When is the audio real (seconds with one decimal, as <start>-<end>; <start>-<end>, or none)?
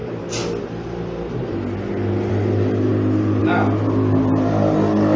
0.0-5.2